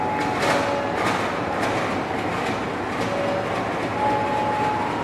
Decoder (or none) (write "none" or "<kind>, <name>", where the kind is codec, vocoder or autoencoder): none